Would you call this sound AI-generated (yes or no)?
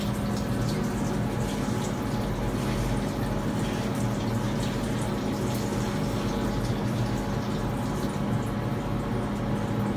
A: no